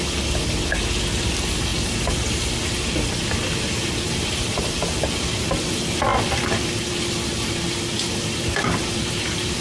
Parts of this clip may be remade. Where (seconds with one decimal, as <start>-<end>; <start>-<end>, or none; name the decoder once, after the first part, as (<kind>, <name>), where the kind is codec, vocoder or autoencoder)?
none